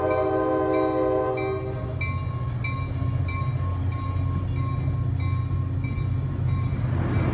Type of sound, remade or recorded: recorded